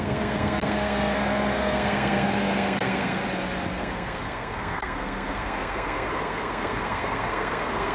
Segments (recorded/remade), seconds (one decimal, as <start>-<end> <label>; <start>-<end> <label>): 0.0-3.2 remade; 3.2-3.7 recorded; 3.7-7.9 remade